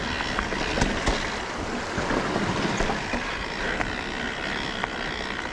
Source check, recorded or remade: recorded